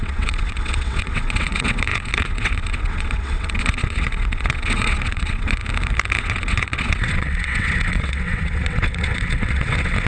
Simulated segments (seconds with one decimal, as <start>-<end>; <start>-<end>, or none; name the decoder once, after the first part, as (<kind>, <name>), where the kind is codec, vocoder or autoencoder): 0.0-5.6 (vocoder, WaveNeXt); 6.2-10.1